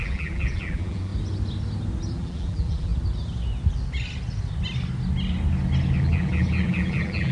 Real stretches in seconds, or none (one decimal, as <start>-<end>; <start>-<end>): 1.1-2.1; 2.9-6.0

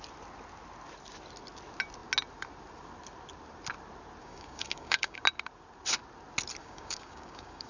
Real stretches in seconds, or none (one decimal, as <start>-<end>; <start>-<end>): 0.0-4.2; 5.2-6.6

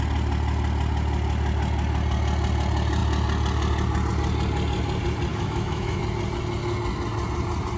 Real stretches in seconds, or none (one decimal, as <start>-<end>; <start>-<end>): 0.0-5.3; 6.0-7.8

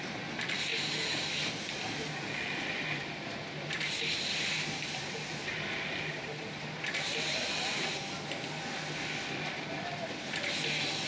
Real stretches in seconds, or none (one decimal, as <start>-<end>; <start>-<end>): 0.0-11.1

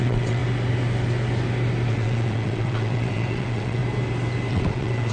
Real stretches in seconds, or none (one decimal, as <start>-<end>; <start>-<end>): 0.4-1.9; 3.8-4.5

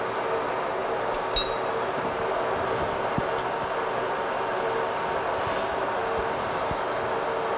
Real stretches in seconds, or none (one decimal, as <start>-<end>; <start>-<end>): 0.0-7.6